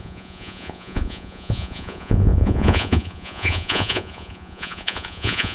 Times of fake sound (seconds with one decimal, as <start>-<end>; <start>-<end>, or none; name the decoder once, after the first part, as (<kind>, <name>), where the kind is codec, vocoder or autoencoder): 0.0-5.5 (vocoder, Vocos)